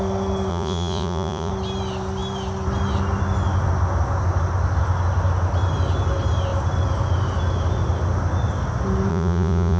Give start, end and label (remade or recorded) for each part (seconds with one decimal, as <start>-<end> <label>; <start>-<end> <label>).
0.0-0.5 recorded; 0.5-1.5 remade; 1.5-9.1 recorded; 9.1-9.8 remade